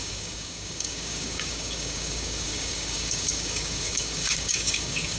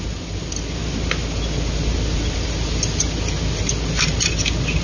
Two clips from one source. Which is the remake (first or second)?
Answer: first